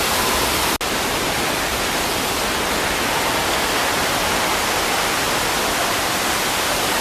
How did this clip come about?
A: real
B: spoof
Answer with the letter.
A